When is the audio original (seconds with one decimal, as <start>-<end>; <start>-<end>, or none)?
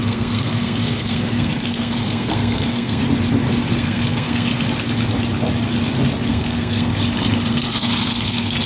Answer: 3.0-3.7; 4.5-6.3; 6.9-7.5